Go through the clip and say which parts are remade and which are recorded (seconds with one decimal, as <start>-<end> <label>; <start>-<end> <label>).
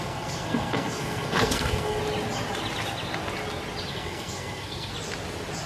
0.0-2.0 remade; 2.0-3.9 recorded; 3.9-4.9 remade; 4.9-5.7 recorded